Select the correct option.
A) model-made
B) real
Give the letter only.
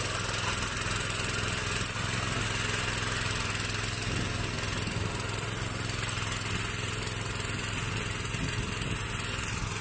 B